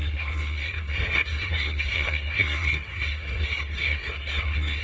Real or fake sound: fake